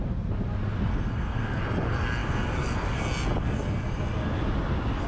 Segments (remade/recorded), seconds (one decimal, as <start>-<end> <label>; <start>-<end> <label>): 0.0-0.9 recorded; 0.9-1.6 remade; 1.6-5.1 recorded